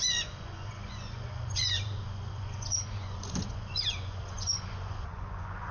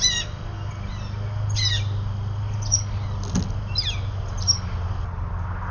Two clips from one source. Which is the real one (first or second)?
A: second